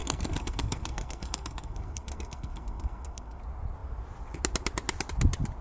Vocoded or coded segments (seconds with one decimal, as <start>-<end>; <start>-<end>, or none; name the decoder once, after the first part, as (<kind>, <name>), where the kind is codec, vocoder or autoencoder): 0.0-3.4 (codec, SNAC)